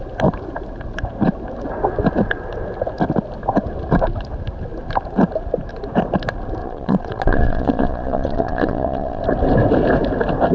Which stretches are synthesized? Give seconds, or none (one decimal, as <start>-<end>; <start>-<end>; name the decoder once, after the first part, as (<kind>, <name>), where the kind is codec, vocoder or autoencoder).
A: 6.6-9.2 (vocoder, Vocos)